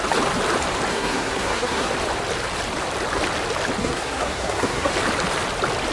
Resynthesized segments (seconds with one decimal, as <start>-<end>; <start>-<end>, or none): 0.9-1.9; 3.8-4.9